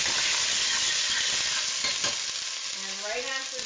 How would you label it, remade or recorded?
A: recorded